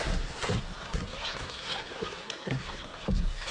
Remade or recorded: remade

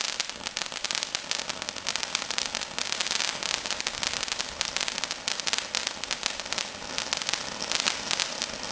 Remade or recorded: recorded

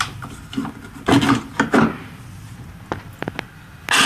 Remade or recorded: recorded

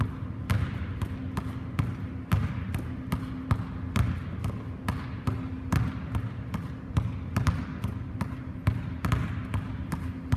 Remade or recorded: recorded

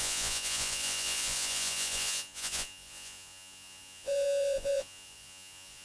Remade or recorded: remade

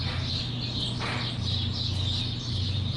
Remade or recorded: recorded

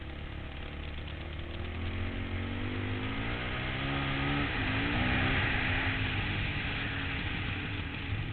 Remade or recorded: recorded